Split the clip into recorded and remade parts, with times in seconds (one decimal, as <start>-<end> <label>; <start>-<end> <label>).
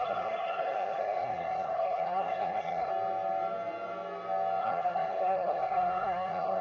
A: 0.0-2.9 remade; 2.9-4.6 recorded; 4.6-6.6 remade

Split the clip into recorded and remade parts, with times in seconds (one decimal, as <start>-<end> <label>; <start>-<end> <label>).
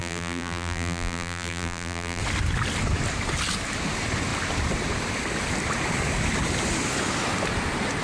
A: 0.0-2.2 remade; 2.2-8.0 recorded